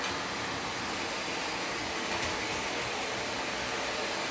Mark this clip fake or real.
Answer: real